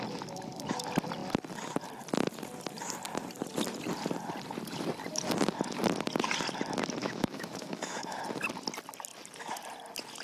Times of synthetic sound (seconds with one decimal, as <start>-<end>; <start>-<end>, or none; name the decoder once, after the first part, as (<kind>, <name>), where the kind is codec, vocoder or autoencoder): 7.0-8.2 (autoencoder, DAC-VAE)